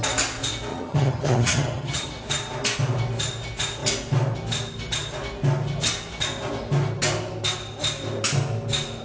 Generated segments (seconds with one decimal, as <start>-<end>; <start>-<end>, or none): 0.7-2.1